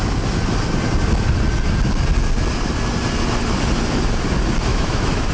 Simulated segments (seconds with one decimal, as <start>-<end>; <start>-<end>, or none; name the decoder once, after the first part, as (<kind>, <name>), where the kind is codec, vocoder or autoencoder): 4.7-5.3 (autoencoder, DAC-VAE)